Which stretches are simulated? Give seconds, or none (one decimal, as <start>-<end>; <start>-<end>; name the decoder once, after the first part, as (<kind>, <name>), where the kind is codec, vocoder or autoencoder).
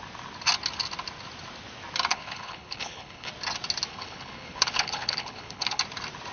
2.1-3.3 (codec, HILCodec); 3.9-5.8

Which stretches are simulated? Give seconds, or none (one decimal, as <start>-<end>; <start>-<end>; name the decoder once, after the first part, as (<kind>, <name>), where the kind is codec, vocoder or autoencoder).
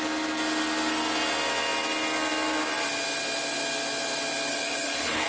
4.5-5.3 (codec, HILCodec)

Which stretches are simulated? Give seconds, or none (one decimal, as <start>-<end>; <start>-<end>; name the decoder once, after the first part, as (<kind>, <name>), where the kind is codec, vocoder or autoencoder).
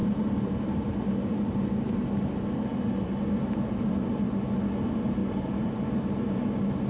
none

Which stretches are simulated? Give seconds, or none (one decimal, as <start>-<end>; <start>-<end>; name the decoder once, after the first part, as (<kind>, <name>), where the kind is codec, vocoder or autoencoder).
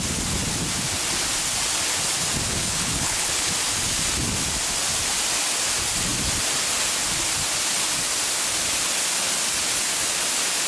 2.5-3.5 (codec, HILCodec)